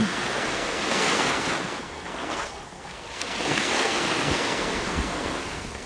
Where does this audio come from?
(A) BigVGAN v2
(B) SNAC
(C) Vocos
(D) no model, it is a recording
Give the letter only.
B